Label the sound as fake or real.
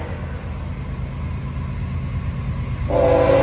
real